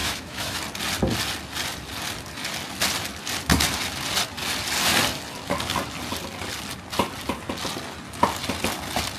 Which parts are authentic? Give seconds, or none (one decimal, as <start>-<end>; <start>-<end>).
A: 0.6-9.2